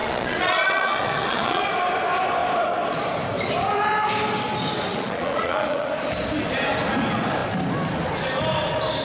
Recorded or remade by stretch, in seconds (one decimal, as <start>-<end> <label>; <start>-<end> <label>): 0.0-1.6 remade; 1.6-4.9 recorded; 4.9-5.9 remade; 5.9-9.0 recorded